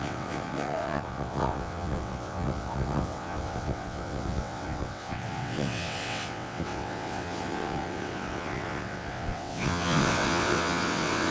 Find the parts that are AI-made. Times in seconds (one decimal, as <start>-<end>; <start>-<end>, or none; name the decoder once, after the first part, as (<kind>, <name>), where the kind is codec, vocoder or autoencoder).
0.0-11.3 (vocoder, WaveNeXt)